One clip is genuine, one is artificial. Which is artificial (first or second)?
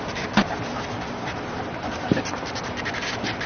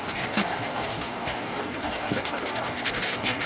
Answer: second